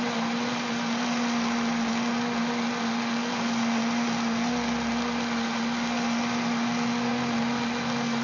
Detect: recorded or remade recorded